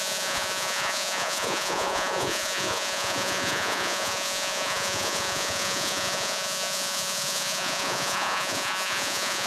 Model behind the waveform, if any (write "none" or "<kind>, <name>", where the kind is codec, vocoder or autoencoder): vocoder, Vocos